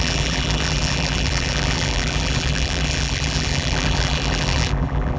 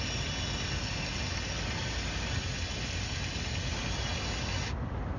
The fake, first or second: first